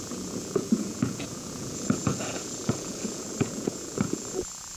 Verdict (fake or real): fake